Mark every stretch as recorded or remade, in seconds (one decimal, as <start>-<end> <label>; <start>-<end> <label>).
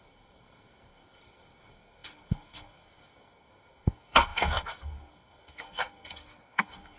0.0-7.0 remade